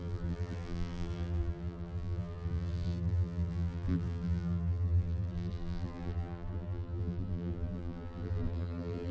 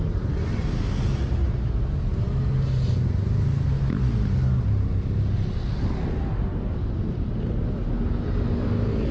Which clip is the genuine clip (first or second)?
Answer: second